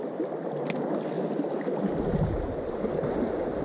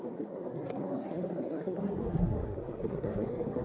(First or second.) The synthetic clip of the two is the second